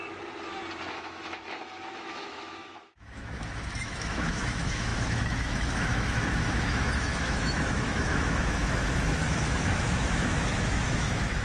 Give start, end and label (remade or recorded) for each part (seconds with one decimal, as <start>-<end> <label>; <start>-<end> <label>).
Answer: 0.0-0.9 recorded; 0.9-11.4 remade